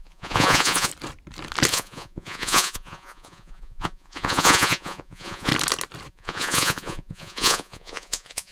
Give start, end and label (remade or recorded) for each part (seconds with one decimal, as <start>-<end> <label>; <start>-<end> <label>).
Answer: 0.0-0.9 remade; 0.9-1.7 recorded; 1.7-5.5 remade; 5.5-6.1 recorded; 6.1-8.5 remade

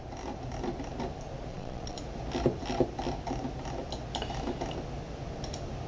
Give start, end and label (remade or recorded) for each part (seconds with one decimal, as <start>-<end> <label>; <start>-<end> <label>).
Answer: 0.0-1.5 recorded; 1.5-2.0 remade; 2.0-5.9 recorded

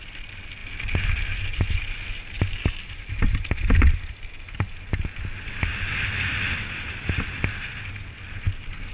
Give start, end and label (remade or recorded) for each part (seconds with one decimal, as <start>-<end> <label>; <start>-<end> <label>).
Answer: 0.0-8.9 recorded

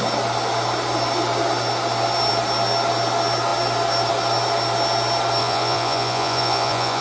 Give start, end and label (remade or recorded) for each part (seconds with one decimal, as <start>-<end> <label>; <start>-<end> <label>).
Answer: 0.0-5.4 recorded; 5.4-7.0 remade

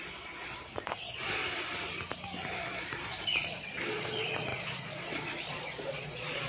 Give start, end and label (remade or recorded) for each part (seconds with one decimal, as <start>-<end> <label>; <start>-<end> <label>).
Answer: 0.0-1.4 remade; 1.4-2.6 recorded; 2.6-6.5 remade

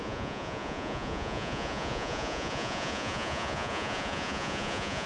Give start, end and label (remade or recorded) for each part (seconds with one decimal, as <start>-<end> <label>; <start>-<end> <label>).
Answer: 0.0-5.1 remade